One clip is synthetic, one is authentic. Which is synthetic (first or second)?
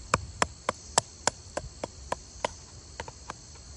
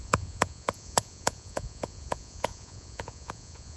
second